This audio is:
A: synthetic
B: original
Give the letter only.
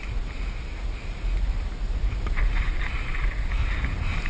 B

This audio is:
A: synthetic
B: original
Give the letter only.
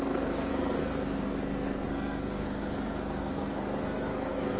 A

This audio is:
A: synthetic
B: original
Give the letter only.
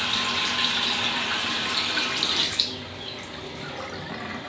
B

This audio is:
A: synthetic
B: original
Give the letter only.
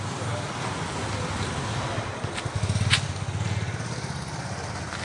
B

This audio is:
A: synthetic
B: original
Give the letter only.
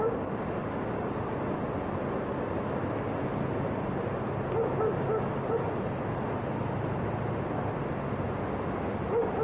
B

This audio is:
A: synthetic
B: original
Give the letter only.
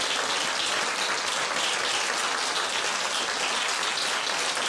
B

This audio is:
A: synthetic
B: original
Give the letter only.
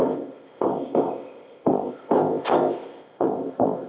A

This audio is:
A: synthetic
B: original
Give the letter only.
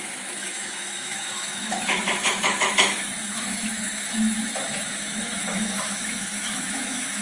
A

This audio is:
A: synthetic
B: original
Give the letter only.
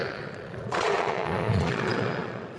A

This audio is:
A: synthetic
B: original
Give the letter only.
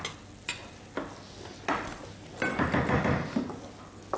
B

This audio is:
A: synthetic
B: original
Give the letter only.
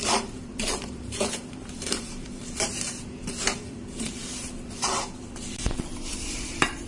A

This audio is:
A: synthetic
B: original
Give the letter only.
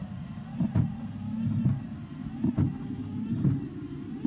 A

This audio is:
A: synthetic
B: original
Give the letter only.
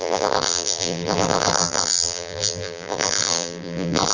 A